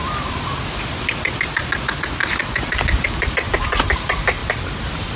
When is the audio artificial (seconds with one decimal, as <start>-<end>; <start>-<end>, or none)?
none